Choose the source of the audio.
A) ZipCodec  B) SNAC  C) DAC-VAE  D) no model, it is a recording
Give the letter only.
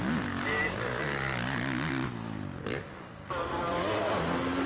D